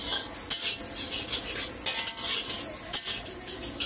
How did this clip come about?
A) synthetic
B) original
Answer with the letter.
B